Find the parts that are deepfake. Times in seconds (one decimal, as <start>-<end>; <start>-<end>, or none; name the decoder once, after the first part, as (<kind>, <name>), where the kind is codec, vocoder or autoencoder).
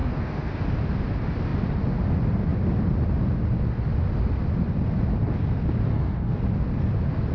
0.0-0.6 (codec, SNAC); 5.9-6.4